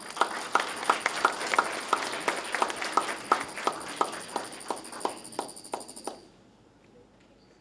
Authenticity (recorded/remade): recorded